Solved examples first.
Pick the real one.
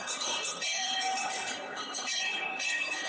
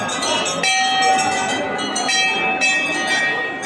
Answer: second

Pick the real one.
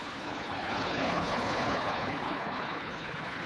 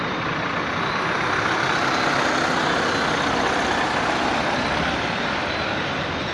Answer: second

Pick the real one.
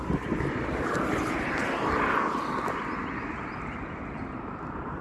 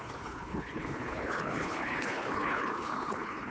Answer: first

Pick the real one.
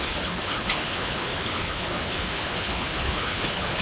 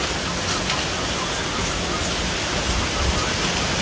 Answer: second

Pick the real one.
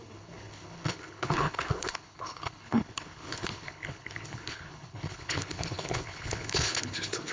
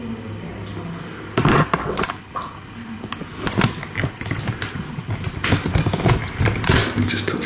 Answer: second